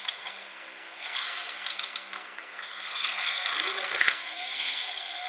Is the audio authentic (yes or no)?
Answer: no